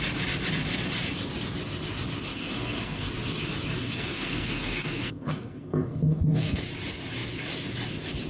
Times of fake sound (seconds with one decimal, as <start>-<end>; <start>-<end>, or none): 2.3-3.1; 3.8-6.6